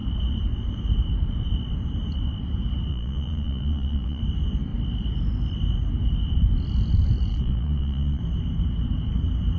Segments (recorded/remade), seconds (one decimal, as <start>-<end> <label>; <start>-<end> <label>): 0.0-2.9 recorded; 2.9-4.2 remade; 4.2-7.3 recorded; 7.3-8.2 remade; 8.2-9.6 recorded